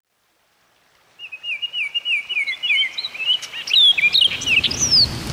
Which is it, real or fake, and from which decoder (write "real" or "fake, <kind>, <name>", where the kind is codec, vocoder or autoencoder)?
real